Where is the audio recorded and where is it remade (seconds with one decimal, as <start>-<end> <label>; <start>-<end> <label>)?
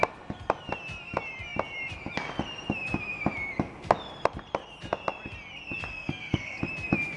0.0-5.9 recorded; 5.9-6.6 remade; 6.6-7.2 recorded